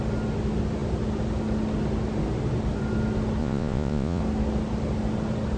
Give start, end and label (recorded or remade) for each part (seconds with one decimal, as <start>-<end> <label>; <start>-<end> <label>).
0.0-3.4 recorded; 3.4-4.2 remade; 4.2-5.6 recorded